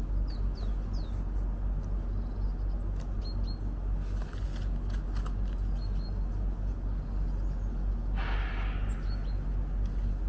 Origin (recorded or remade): recorded